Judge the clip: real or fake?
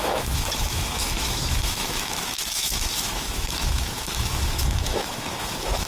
fake